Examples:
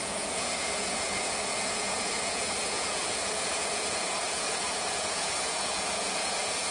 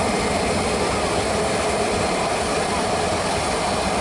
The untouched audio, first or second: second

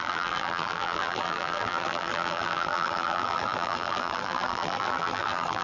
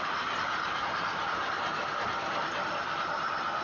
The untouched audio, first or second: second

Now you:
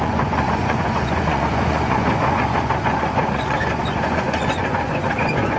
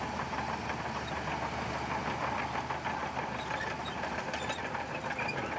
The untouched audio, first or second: second